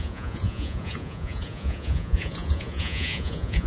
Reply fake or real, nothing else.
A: fake